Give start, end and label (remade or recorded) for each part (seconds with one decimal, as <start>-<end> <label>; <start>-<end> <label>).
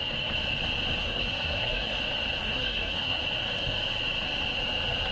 0.0-1.0 recorded; 1.0-2.0 remade; 2.0-2.4 recorded; 2.4-3.2 remade; 3.2-5.1 recorded